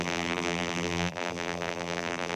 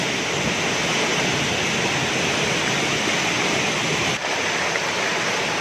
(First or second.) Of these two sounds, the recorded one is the second